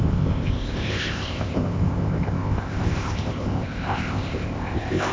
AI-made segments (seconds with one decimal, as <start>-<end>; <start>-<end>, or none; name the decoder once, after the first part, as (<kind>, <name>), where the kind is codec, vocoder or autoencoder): 0.0-5.1 (codec, ZipCodec)